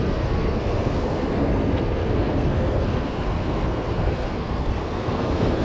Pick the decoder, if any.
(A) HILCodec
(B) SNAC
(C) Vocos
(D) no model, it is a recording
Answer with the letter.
B